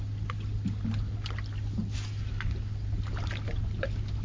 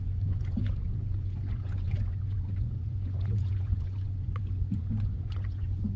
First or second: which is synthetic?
second